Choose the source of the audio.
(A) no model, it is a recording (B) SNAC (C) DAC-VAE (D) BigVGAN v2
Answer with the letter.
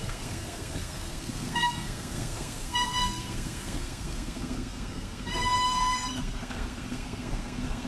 B